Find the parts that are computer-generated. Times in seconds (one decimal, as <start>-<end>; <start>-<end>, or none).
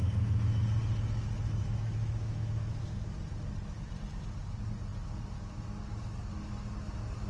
1.6-2.8